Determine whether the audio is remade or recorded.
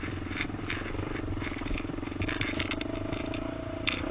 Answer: recorded